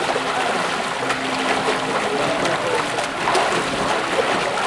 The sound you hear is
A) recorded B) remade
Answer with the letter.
A